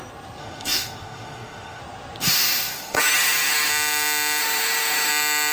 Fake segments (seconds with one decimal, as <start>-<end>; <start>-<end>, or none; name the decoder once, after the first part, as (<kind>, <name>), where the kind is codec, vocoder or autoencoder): 0.4-1.8 (autoencoder, DAC-VAE); 2.2-3.7; 4.4-5.1